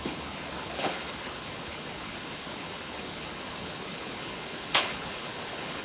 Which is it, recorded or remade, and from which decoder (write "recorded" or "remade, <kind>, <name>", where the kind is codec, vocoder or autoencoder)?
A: remade, codec, HILCodec